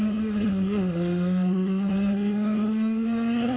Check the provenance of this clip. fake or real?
fake